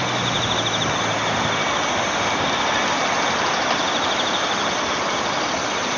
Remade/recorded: recorded